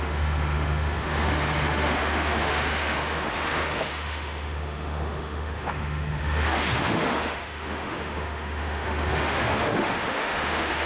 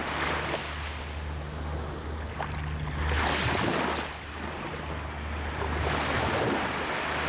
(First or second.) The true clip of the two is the second